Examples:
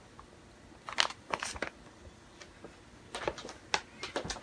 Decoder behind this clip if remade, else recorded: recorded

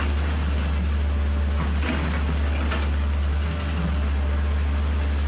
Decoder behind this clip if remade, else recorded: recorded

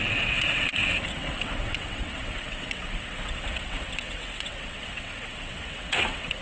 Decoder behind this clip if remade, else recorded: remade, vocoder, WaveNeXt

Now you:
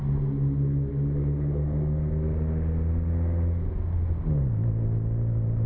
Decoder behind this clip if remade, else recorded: recorded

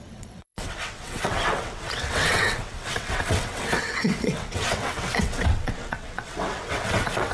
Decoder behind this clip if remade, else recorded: remade, vocoder, WaveNeXt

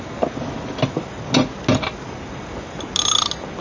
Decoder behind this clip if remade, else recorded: recorded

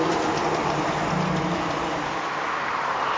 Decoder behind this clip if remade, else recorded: recorded